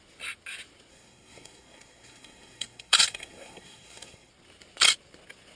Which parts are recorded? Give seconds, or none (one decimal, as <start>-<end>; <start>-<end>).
0.0-0.9; 4.3-5.6